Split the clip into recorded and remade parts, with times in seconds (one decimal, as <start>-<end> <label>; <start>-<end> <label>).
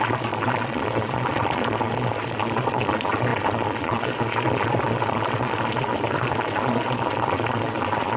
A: 0.0-8.2 remade